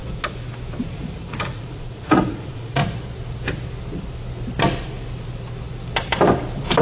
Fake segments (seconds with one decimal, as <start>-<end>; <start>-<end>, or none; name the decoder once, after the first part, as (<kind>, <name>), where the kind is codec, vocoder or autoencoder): 0.9-2.8 (vocoder, Vocos)